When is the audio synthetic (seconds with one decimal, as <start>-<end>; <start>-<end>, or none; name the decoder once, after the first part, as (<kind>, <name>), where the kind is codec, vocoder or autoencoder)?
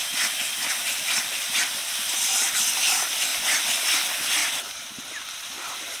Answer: 1.8-2.6 (vocoder, BigVGAN v2); 4.4-6.0